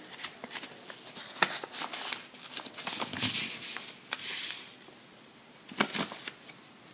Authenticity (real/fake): real